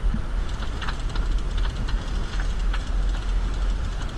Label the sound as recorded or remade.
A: recorded